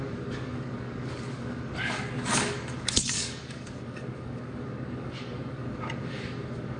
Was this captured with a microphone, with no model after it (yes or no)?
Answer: no